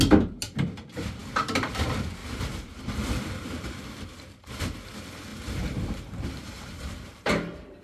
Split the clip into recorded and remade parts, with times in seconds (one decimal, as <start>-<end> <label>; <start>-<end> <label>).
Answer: 0.0-2.2 recorded; 2.2-4.6 remade; 4.6-5.3 recorded; 5.3-7.8 remade